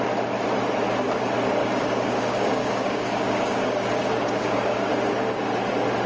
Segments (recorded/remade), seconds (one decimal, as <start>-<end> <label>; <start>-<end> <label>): 0.0-1.6 recorded; 1.6-4.9 remade; 4.9-6.1 recorded